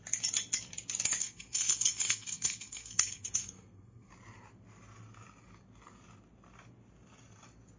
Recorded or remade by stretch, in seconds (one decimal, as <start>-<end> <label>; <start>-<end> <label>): 0.0-1.2 recorded; 1.2-4.1 remade; 4.1-7.8 recorded